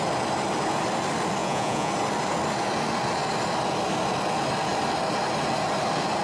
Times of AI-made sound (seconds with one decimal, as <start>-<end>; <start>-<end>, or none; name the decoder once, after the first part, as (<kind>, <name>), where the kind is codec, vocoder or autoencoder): 1.4-1.9 (vocoder, Vocos)